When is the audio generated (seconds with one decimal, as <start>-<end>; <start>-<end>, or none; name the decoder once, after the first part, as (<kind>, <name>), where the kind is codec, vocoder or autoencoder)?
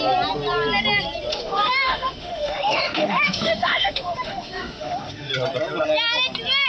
1.3-5.3 (autoencoder, DAC-VAE)